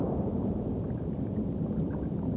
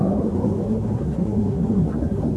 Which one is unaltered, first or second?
first